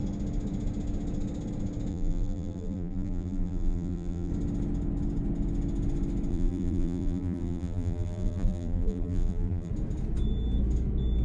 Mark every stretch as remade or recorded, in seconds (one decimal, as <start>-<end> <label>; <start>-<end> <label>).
0.0-1.9 recorded; 1.9-4.3 remade; 4.3-6.3 recorded; 6.3-9.7 remade; 9.7-11.2 recorded